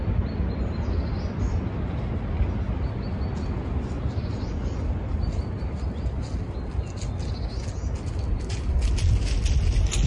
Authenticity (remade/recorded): recorded